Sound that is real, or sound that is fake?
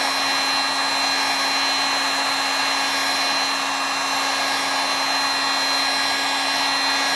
real